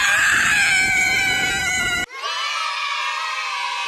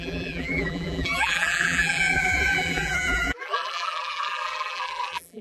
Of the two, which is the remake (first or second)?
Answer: second